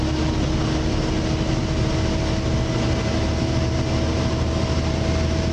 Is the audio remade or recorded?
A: recorded